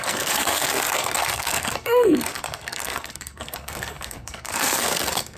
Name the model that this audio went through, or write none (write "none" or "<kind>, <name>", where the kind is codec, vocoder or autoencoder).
codec, SNAC